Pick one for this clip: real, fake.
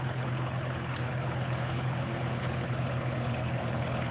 fake